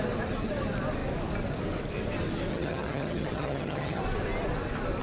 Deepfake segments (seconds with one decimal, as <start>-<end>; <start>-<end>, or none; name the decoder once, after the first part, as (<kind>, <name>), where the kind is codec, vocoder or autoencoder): 2.5-4.0 (vocoder, HiFi-GAN)